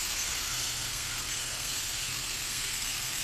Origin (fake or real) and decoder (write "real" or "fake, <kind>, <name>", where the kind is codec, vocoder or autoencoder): fake, codec, SNAC